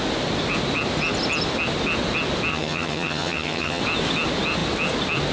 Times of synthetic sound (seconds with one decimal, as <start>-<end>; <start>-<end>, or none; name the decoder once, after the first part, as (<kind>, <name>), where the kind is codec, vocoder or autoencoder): 2.5-3.8 (vocoder, HiFi-GAN)